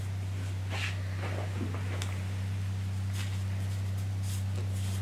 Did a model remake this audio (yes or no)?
no